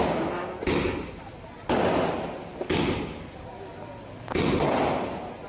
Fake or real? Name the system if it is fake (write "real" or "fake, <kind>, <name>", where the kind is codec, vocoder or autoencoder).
real